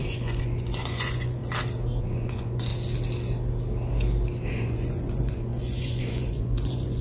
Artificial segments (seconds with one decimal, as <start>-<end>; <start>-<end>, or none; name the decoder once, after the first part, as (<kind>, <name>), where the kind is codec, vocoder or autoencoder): 0.0-1.4 (vocoder, Vocos); 2.0-2.7; 4.5-7.0